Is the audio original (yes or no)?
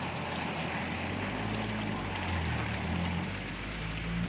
yes